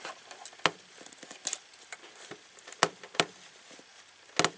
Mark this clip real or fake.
real